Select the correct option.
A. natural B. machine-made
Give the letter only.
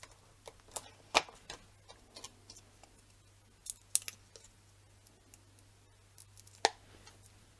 A